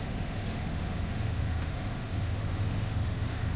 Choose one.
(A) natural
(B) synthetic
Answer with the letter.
B